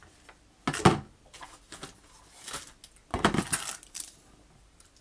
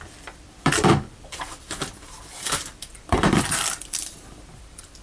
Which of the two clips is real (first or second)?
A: first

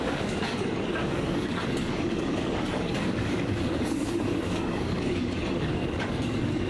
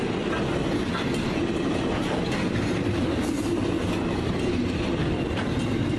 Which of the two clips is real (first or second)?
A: second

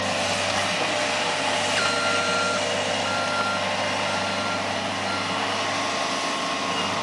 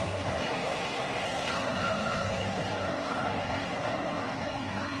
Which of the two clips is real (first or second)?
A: first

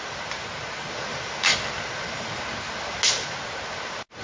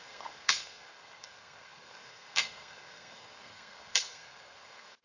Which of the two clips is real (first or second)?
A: first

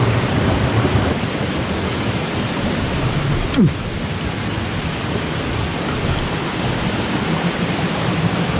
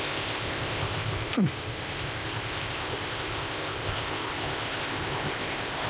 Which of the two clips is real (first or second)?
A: first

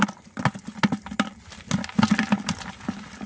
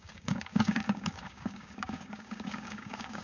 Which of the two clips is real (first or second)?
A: first